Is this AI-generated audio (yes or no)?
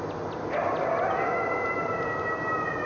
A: no